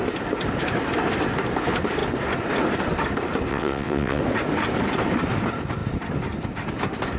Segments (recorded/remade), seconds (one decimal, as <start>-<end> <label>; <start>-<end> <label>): 0.0-3.5 recorded; 3.5-4.2 remade; 4.2-7.2 recorded